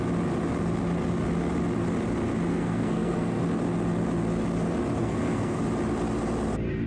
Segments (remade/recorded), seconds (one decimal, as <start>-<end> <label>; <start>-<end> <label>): 0.0-2.5 recorded; 2.5-3.4 remade; 3.4-5.0 recorded; 5.0-5.6 remade; 5.6-6.9 recorded